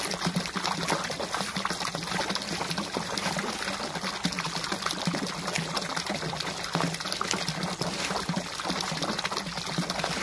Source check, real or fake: real